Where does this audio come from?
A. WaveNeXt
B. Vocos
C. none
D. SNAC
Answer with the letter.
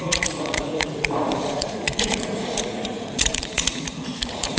B